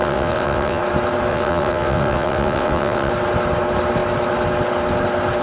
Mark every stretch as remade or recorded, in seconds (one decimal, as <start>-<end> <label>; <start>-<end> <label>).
0.0-0.8 remade; 0.8-1.3 recorded; 1.3-3.1 remade; 3.1-5.4 recorded